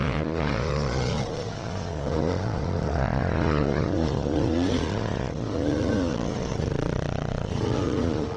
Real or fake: fake